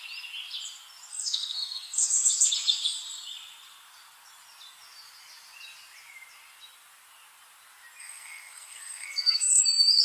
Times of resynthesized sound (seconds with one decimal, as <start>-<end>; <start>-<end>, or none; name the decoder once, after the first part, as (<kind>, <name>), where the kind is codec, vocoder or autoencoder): 1.1-2.5 (codec, SNAC); 8.0-9.6

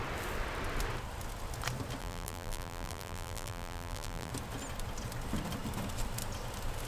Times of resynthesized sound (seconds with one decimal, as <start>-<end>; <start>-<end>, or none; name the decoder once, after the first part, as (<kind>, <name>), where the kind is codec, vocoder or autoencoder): 2.0-4.3 (vocoder, BigVGAN v2)